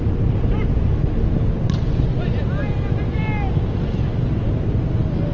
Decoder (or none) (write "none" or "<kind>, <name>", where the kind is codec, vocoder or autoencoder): none